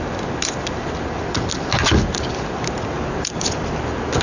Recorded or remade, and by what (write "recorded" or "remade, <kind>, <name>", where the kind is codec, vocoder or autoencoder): recorded